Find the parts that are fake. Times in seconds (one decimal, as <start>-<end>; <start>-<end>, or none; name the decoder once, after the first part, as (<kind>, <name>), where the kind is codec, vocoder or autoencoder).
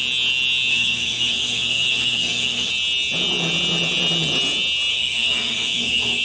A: 0.7-2.7 (codec, SNAC); 4.9-6.2